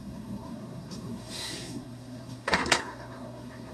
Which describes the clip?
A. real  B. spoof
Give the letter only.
B